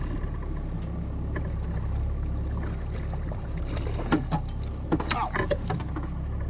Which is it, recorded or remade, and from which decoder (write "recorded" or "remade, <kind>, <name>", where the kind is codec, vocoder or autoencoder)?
recorded